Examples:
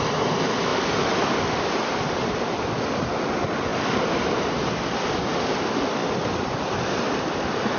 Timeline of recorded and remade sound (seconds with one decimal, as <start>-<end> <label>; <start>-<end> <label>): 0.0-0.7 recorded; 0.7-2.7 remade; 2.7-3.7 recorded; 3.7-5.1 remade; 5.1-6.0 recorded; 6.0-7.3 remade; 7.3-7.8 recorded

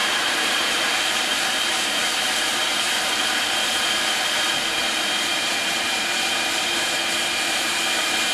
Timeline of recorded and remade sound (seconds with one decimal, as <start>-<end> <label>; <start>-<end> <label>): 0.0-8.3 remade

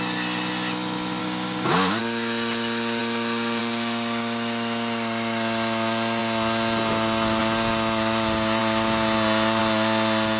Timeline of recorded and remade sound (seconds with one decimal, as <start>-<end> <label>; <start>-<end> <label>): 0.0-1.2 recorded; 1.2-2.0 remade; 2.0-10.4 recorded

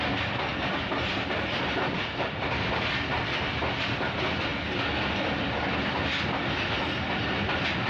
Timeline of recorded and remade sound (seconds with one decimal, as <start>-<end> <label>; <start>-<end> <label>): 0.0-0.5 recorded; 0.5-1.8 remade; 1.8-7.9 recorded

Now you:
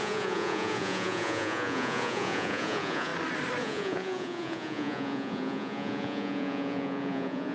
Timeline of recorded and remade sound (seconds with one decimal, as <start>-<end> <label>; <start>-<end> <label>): 0.0-3.1 remade; 3.1-3.6 recorded; 3.6-7.5 remade

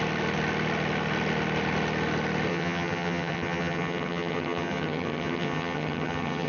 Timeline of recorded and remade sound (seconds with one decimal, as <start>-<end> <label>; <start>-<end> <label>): 0.0-2.5 recorded; 2.5-6.5 remade

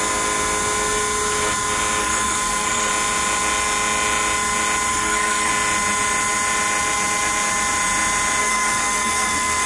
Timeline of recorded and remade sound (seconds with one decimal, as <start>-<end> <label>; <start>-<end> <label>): 0.0-2.0 recorded; 2.0-2.9 remade; 2.9-4.9 recorded; 4.9-5.5 remade; 5.5-8.4 recorded; 8.4-9.7 remade

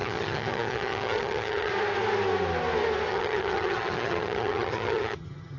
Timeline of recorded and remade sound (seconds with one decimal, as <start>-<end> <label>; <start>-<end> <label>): 0.0-1.7 remade; 1.7-3.1 recorded; 3.1-5.6 remade